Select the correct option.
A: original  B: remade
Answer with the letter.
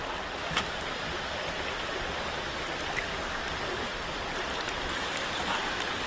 A